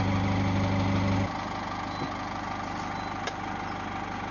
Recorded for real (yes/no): yes